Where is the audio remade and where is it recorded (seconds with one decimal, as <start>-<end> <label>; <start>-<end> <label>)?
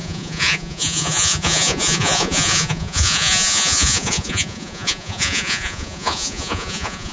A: 0.0-7.1 remade